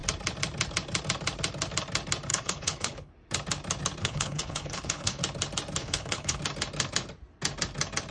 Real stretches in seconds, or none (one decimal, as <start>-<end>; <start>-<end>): 0.0-2.3; 3.1-4.0; 5.2-5.8; 6.4-8.1